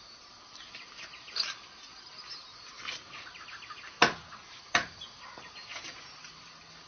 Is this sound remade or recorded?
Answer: recorded